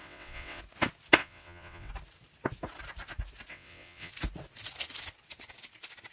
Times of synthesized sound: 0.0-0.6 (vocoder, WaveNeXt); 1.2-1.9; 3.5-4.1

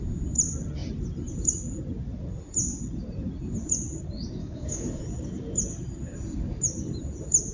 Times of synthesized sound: 4.4-5.0 (codec, DAC)

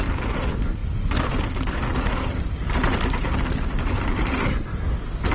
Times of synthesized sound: none

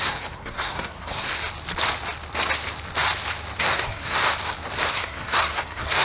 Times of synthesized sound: 0.0-1.3 (codec, SNAC); 3.6-4.2; 4.9-6.0

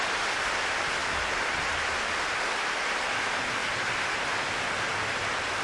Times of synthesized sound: none

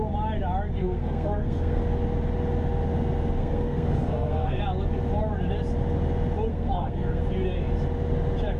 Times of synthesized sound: 0.8-1.8 (codec, SNAC); 3.4-4.6; 6.5-7.2

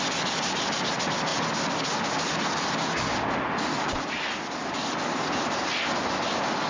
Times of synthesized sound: none

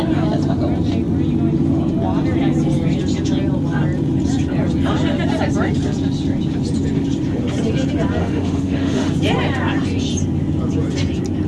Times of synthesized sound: 8.2-9.1 (autoencoder, DAC-VAE)